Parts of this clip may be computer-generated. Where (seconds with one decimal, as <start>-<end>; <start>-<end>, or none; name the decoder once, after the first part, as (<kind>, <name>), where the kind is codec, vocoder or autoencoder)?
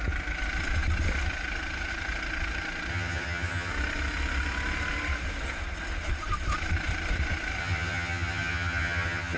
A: 2.9-3.7 (vocoder, HiFi-GAN); 7.6-9.4